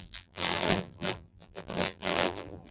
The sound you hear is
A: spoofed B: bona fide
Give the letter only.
A